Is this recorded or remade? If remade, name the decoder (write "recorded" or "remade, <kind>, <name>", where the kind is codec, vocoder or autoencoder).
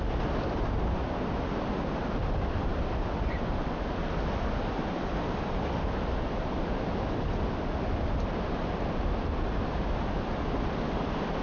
recorded